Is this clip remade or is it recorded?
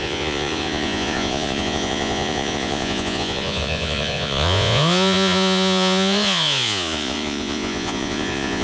remade